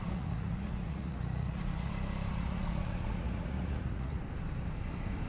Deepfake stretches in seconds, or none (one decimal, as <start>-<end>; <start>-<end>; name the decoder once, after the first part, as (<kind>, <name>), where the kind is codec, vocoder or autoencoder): 0.0-1.9 (vocoder, Vocos); 2.3-4.2